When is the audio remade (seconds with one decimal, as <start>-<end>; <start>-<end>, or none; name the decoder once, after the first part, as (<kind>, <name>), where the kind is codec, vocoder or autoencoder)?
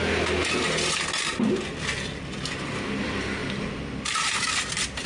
3.4-4.4 (vocoder, BigVGAN v2)